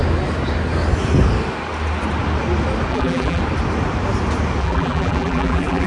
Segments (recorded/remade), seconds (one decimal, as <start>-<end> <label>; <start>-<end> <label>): 0.0-2.9 recorded; 2.9-3.4 remade; 3.4-4.6 recorded; 4.6-5.9 remade